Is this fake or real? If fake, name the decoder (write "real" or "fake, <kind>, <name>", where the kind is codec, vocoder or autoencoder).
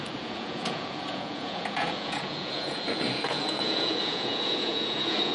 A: fake, vocoder, Vocos